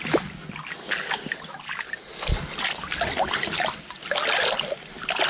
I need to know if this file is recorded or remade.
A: recorded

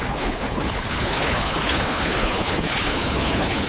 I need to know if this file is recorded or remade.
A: remade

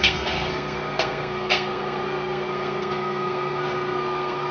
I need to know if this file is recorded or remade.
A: remade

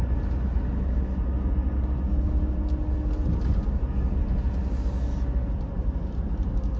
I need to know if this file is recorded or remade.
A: recorded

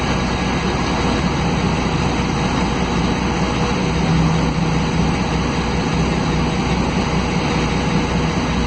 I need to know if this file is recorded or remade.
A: recorded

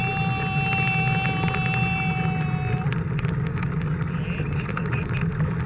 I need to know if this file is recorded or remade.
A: recorded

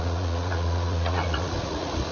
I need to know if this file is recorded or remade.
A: remade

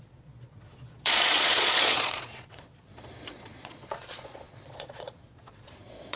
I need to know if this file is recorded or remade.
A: remade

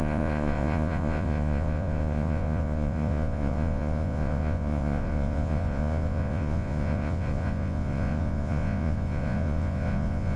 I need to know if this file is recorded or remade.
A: remade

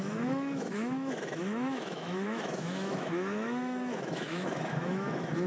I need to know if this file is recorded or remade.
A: remade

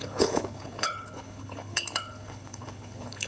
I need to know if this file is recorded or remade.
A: remade